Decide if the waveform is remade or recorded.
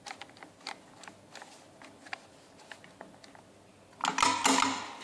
recorded